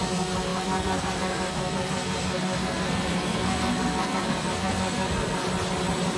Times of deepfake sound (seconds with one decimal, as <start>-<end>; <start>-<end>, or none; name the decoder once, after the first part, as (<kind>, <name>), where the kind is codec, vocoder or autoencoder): 0.0-5.4 (codec, SNAC)